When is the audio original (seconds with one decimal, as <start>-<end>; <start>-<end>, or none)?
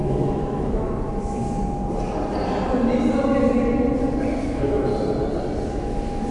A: 1.6-4.4; 4.9-5.7